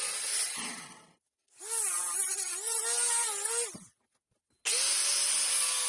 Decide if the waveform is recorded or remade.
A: recorded